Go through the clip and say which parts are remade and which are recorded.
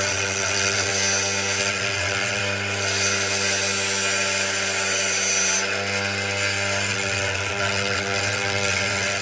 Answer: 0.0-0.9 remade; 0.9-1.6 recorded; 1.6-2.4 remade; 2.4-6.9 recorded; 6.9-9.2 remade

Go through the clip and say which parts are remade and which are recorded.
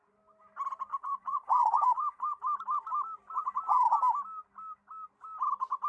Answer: 0.0-0.9 recorded; 0.9-2.4 remade; 2.4-5.9 recorded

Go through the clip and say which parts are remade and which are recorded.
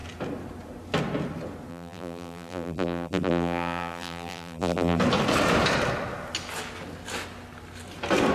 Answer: 0.0-1.7 recorded; 1.7-5.0 remade; 5.0-8.3 recorded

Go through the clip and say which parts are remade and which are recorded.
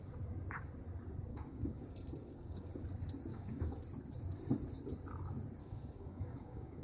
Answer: 0.0-1.3 recorded; 1.3-2.7 remade; 2.7-3.3 recorded; 3.3-3.8 remade; 3.8-5.6 recorded; 5.6-6.8 remade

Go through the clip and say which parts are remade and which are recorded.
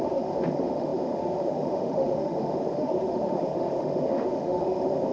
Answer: 0.0-5.1 remade